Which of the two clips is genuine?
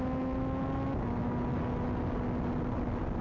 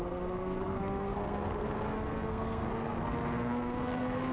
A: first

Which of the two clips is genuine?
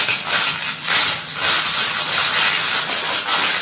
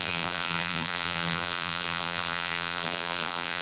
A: first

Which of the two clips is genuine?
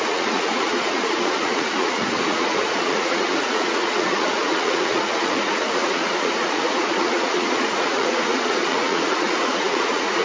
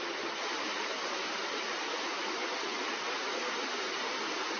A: second